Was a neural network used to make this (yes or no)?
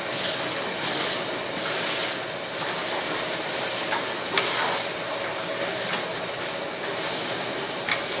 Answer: no